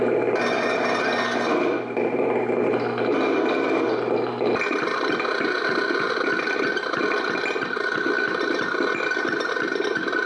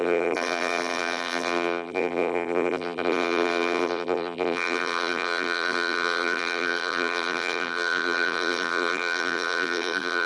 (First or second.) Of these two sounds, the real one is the first